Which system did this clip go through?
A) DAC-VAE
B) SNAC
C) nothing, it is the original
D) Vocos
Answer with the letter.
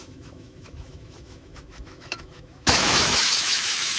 A